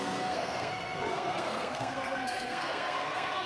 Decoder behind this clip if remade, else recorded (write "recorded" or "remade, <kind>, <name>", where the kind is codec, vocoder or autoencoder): remade, codec, SNAC